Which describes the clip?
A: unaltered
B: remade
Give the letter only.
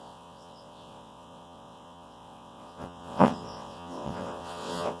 B